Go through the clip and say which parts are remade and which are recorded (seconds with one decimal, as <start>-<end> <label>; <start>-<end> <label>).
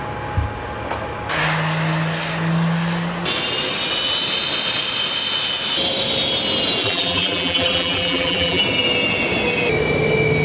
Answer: 0.0-6.8 recorded; 6.8-8.6 remade; 8.6-10.4 recorded